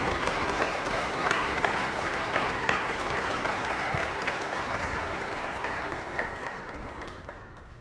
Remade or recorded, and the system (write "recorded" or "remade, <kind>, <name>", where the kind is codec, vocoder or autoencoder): remade, codec, SNAC